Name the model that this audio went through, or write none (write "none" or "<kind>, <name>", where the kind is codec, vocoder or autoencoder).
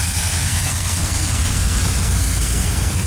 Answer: codec, SNAC